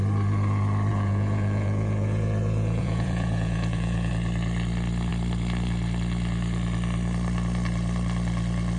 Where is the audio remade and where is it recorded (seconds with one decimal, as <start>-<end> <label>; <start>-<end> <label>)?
0.0-0.9 recorded; 0.9-4.1 remade; 4.1-8.8 recorded